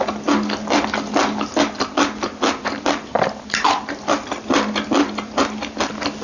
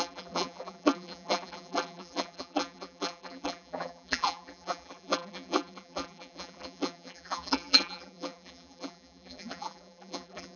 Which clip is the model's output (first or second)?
second